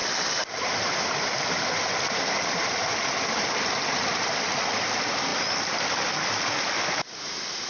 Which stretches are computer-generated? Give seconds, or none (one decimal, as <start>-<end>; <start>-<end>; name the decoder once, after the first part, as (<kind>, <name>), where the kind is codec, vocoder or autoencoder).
none